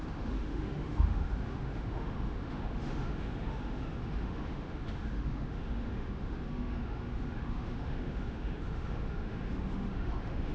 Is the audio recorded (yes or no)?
no